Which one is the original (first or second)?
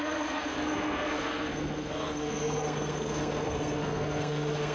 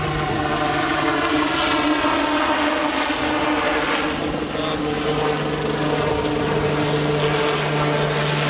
second